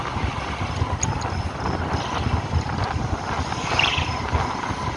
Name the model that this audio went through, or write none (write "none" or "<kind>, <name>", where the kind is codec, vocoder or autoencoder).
none